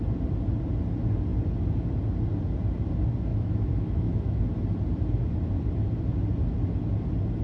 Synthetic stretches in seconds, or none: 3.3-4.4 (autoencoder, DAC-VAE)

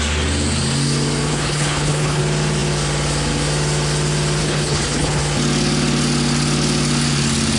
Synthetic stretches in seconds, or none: 1.3-2.2 (codec, HILCodec); 4.4-5.2

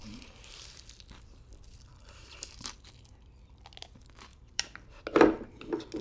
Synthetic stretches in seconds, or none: 0.0-0.8 (vocoder, BigVGAN v2); 1.9-2.8; 4.3-5.0

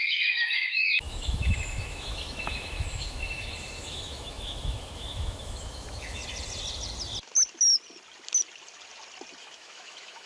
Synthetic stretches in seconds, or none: 0.0-6.2 (autoencoder, DAC-VAE); 9.4-10.3